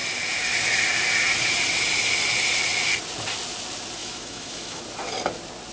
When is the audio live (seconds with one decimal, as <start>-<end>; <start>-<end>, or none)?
0.0-4.0; 4.8-5.7